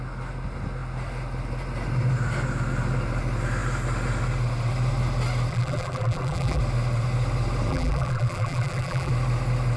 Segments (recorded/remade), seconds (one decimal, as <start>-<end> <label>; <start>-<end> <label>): 0.0-5.5 recorded; 5.5-6.6 remade; 6.6-7.7 recorded; 7.7-9.1 remade; 9.1-9.8 recorded